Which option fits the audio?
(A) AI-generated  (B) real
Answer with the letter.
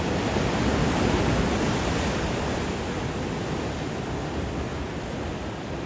B